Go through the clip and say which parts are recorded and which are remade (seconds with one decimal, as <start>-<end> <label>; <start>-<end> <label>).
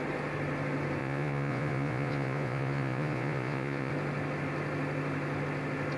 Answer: 0.0-1.0 recorded; 1.0-3.9 remade; 3.9-6.0 recorded